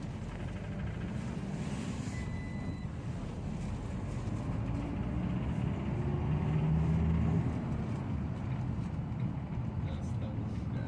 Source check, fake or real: real